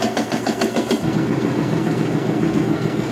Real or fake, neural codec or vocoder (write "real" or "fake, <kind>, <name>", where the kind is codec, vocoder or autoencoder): fake, codec, SNAC